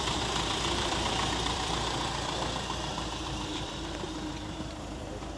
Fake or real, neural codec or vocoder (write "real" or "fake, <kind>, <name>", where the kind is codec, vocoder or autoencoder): fake, vocoder, BigVGAN v2